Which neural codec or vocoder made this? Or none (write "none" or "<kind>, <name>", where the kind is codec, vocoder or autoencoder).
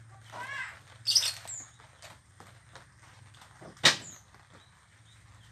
none